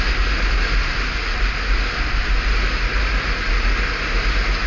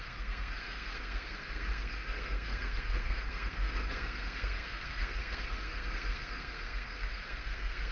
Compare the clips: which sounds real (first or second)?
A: first